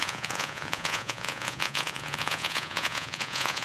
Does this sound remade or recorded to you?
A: remade